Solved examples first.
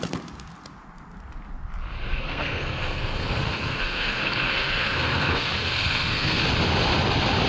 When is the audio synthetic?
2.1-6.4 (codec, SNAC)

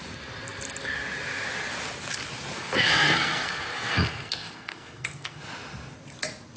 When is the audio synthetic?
2.6-5.4 (codec, SNAC)

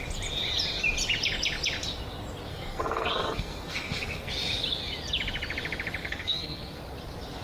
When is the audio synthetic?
2.5-4.3 (codec, SNAC); 6.0-6.8

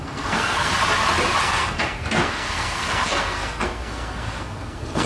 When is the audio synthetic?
0.0-0.7 (codec, SNAC); 1.4-5.1